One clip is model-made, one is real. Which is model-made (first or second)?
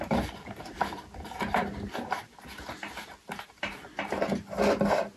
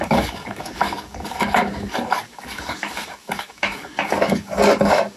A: second